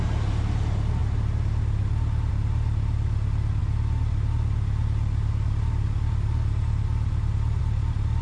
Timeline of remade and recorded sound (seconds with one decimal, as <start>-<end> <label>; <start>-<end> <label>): 0.0-8.2 recorded